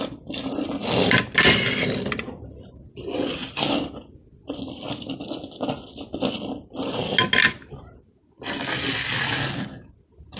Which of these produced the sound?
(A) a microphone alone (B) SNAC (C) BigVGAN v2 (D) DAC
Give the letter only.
A